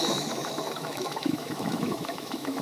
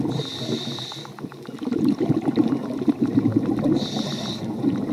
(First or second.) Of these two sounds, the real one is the second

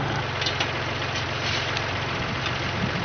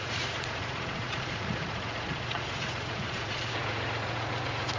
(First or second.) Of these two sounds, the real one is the first